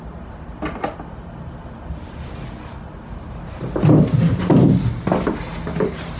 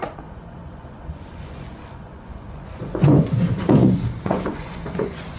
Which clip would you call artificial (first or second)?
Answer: second